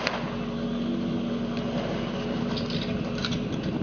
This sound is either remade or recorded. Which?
recorded